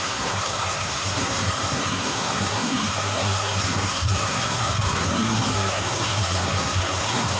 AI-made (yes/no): yes